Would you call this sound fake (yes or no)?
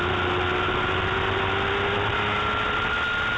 no